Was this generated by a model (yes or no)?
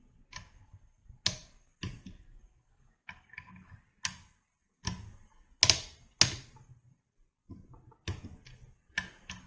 no